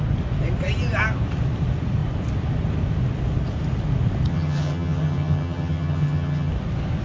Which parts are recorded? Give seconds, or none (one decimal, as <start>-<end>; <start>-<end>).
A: 0.0-4.3; 6.5-7.0